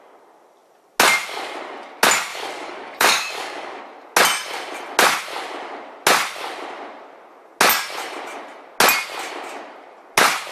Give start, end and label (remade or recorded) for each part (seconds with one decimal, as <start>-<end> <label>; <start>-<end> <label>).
0.0-2.3 recorded; 2.3-3.8 remade; 3.8-10.5 recorded